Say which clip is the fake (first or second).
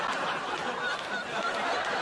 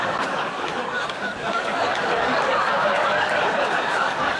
second